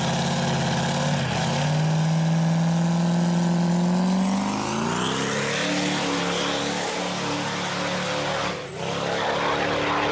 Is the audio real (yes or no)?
yes